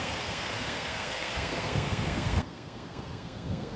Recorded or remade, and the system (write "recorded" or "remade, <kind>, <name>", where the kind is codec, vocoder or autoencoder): remade, codec, SNAC